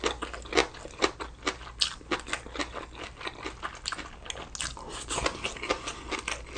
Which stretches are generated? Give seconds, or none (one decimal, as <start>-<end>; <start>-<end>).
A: none